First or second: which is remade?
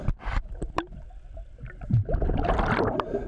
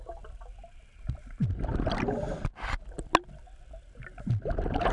first